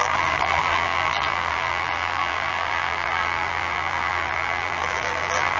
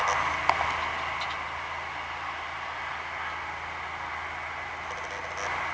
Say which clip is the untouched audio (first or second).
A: second